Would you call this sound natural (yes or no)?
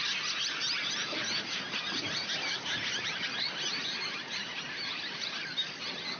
yes